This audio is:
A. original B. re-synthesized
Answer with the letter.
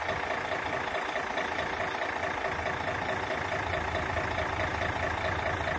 A